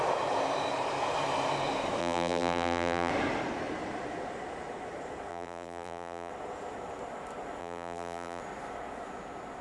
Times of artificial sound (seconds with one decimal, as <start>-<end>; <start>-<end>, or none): 2.0-3.1; 5.3-6.3; 7.6-8.4